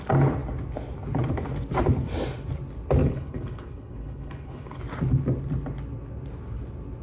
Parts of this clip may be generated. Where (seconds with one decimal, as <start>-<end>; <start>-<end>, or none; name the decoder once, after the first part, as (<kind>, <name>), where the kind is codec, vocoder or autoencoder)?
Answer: 3.0-4.8 (codec, HILCodec)